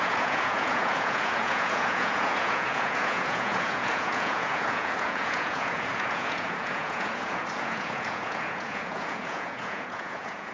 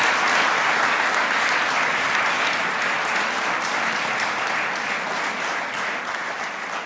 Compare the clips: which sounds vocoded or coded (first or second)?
first